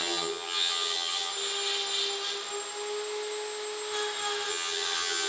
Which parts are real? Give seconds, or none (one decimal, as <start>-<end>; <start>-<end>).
1.3-4.5